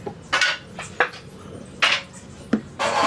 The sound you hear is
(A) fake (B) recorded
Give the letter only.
B